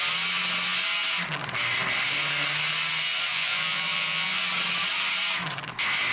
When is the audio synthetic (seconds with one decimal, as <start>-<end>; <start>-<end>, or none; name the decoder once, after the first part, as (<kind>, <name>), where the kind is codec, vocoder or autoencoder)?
3.3-4.4 (vocoder, Vocos)

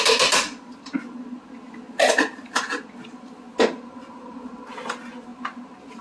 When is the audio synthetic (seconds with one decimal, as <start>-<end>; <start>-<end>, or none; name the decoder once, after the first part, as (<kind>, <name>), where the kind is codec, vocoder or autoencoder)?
none

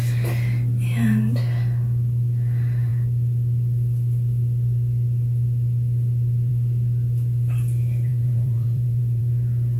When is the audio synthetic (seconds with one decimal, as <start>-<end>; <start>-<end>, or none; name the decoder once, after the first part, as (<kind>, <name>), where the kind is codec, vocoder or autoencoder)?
8.1-9.2 (vocoder, Vocos)